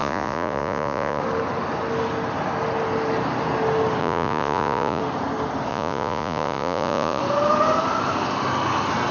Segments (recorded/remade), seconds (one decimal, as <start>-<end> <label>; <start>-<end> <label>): 0.0-1.2 remade; 1.2-4.0 recorded; 4.0-5.0 remade; 5.0-5.7 recorded; 5.7-7.2 remade; 7.2-9.1 recorded